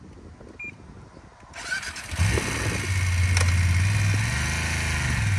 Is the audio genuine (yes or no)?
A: yes